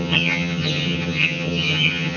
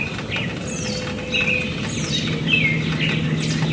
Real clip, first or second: second